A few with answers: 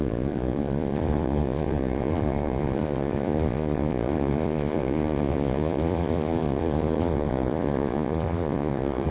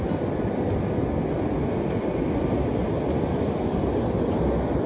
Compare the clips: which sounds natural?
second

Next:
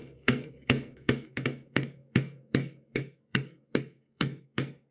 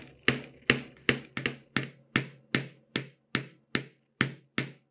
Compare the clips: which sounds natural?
second